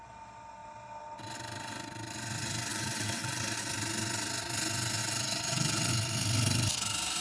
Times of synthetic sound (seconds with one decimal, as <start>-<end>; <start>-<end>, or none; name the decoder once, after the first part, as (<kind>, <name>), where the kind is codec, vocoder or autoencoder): 2.7-3.4 (vocoder, WaveNeXt); 5.0-5.9